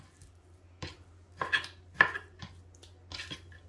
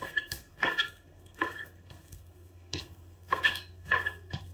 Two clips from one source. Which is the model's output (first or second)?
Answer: second